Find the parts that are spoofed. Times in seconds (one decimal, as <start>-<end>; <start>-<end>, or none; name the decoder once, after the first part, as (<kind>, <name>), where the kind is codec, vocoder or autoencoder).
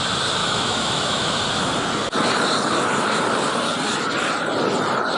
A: 0.4-1.4 (autoencoder, DAC-VAE)